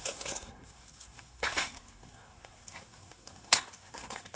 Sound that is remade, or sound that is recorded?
remade